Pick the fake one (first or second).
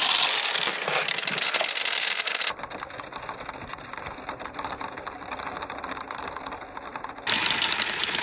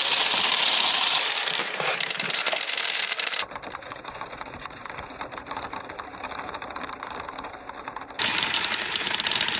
second